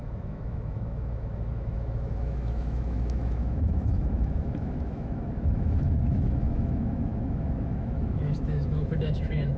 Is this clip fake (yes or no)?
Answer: yes